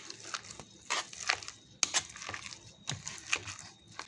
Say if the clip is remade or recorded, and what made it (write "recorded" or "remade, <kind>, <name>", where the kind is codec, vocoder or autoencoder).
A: recorded